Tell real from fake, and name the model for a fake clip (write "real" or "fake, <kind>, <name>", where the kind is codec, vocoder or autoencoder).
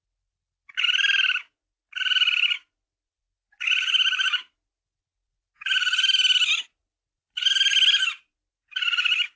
real